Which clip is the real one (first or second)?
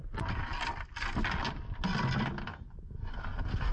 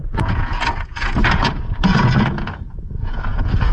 first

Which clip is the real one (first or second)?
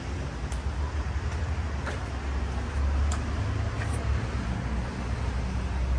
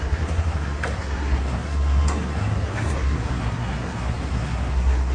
first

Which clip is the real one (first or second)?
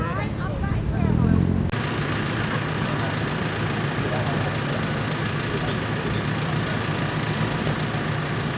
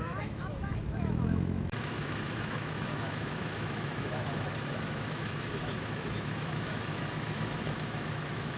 first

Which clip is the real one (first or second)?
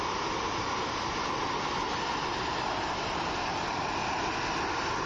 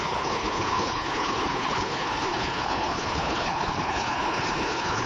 first